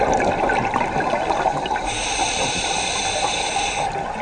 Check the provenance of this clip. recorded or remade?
recorded